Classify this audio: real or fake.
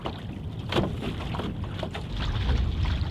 real